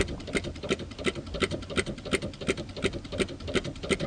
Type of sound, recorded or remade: recorded